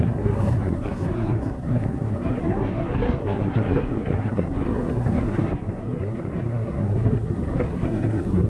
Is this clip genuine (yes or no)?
no